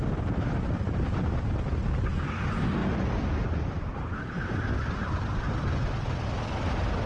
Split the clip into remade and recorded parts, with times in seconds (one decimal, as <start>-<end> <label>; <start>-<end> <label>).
0.0-7.1 recorded